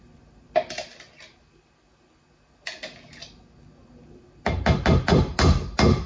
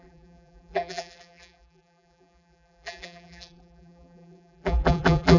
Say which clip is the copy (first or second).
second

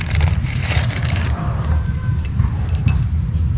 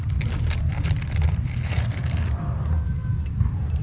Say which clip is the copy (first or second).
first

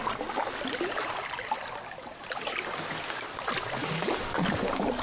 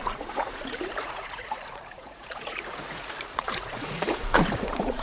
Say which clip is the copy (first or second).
second